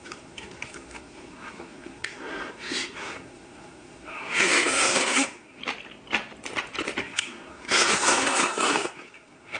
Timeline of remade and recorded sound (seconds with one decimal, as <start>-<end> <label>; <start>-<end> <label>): 0.0-5.6 remade; 5.6-7.0 recorded; 7.0-9.6 remade